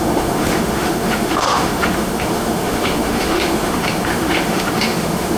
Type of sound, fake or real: fake